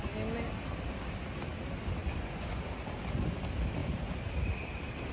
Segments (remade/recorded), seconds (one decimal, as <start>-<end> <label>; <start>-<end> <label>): 0.0-2.0 recorded; 2.0-2.6 remade; 2.6-5.1 recorded